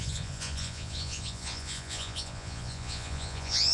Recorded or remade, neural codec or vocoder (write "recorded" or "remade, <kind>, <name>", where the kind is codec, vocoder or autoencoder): remade, vocoder, Vocos